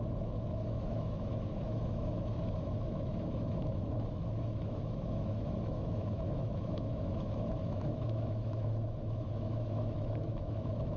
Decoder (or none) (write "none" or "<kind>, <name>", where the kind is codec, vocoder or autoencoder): autoencoder, DAC-VAE